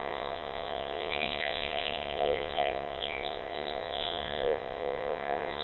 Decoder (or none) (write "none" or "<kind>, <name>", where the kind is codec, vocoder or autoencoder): vocoder, WaveNeXt